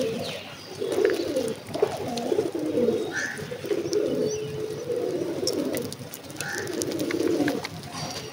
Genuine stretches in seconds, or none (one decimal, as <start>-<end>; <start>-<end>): 0.0-8.3